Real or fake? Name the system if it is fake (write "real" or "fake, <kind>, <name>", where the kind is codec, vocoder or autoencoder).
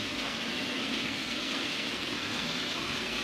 fake, codec, SNAC